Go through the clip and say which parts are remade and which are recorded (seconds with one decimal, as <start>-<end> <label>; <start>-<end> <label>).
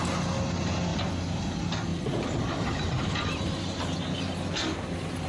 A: 0.0-0.9 recorded; 0.9-1.5 remade; 1.5-1.9 recorded; 1.9-3.8 remade; 3.8-5.3 recorded